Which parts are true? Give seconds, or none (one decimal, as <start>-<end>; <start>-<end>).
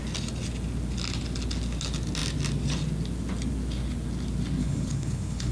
0.0-4.6